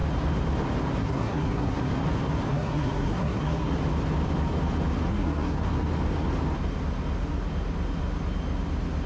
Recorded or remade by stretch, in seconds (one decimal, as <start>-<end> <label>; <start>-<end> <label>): 0.0-1.0 recorded; 1.0-1.9 remade; 1.9-2.5 recorded; 2.5-3.7 remade; 3.7-5.1 recorded; 5.1-5.9 remade; 5.9-9.1 recorded